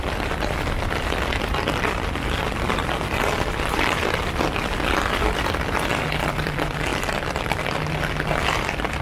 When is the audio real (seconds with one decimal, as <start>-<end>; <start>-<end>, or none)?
none